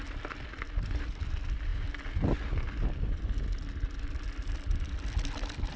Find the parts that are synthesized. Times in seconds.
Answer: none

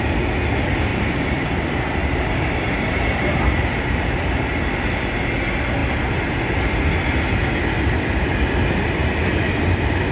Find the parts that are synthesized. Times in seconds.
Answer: 0.9-1.5 (vocoder, BigVGAN v2); 2.0-5.3

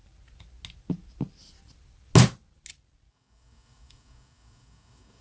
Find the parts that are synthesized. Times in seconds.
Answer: 3.1-5.2 (codec, DAC)

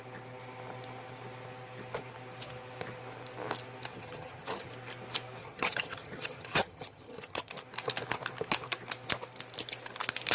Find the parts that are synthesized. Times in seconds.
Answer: 3.9-4.7 (vocoder, HiFi-GAN); 5.4-7.5

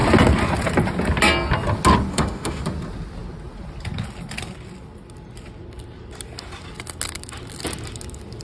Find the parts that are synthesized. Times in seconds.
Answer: 2.1-2.6 (autoencoder, DAC-VAE)